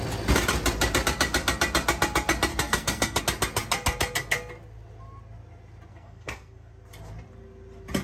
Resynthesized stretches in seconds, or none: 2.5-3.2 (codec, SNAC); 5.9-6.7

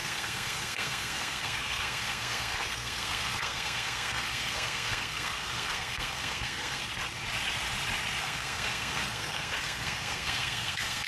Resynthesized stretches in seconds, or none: 0.0-6.8 (codec, SNAC); 8.2-11.1